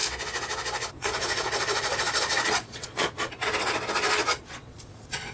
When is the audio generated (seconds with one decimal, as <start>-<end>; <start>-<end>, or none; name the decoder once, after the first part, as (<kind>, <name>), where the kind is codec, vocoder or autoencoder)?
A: 0.9-3.5 (vocoder, Vocos); 4.4-5.3